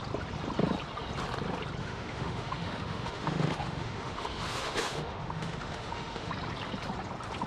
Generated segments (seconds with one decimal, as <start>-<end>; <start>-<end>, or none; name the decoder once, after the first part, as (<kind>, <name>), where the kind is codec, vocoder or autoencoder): 1.8-6.3 (autoencoder, DAC-VAE)